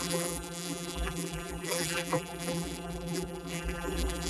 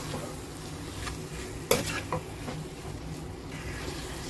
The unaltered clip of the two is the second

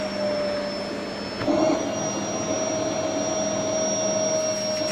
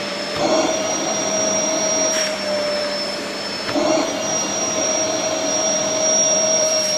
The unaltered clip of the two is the first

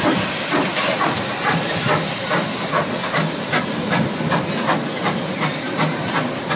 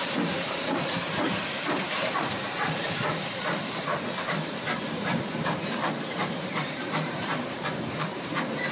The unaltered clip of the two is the first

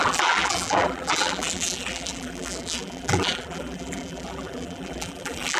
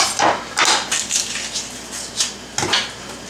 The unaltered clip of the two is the second